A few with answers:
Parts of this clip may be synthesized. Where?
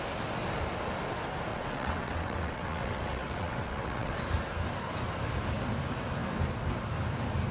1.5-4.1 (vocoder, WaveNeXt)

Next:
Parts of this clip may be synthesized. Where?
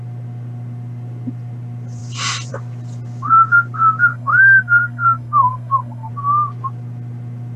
4.1-6.1 (codec, SNAC)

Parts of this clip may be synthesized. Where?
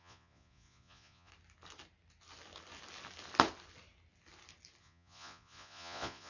0.0-1.3 (vocoder, Vocos); 4.8-6.3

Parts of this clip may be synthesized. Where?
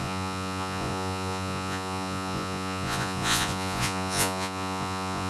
0.0-5.3 (vocoder, Vocos)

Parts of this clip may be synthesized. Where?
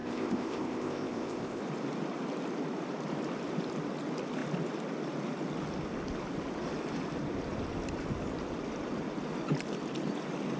0.0-1.6 (codec, ZipCodec)